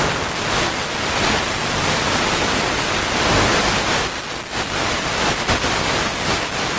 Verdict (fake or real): real